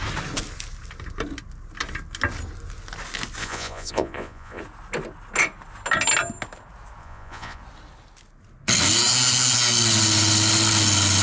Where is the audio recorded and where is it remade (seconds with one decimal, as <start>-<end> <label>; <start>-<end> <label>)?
0.0-3.4 recorded; 3.4-4.6 remade; 4.6-7.0 recorded; 7.0-7.6 remade; 7.6-11.2 recorded

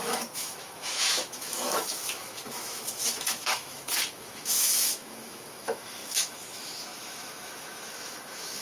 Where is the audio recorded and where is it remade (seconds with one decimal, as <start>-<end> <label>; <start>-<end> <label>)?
0.0-8.6 remade

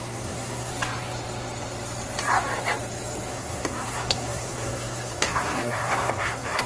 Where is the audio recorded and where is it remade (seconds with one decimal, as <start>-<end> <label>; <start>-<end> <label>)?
0.0-0.7 remade; 0.7-3.3 recorded; 3.3-6.7 remade

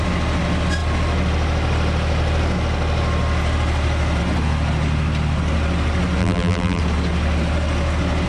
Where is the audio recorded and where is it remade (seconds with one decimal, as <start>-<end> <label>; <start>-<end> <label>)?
0.0-6.2 recorded; 6.2-6.8 remade; 6.8-8.3 recorded

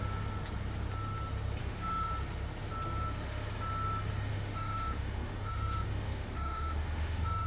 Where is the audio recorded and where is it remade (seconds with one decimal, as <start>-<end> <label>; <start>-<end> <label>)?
0.0-1.6 recorded; 1.6-2.1 remade; 2.1-4.3 recorded; 4.3-7.5 remade

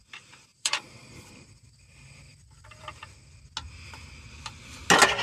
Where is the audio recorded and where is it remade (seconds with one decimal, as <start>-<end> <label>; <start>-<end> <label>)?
0.0-0.5 recorded; 0.5-1.8 remade; 1.8-5.2 recorded

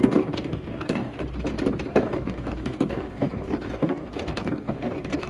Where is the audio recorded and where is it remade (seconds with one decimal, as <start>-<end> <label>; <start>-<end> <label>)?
0.0-1.2 remade; 1.2-1.9 recorded; 1.9-5.3 remade

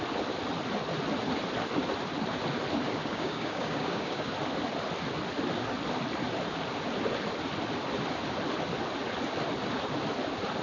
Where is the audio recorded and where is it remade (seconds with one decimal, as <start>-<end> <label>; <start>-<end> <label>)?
0.0-3.0 recorded; 3.0-4.3 remade; 4.3-10.6 recorded